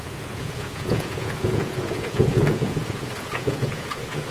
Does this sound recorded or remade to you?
remade